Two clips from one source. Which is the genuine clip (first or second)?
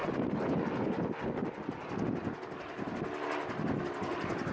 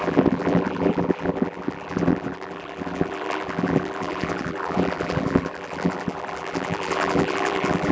first